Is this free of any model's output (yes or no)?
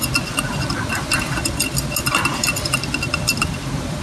yes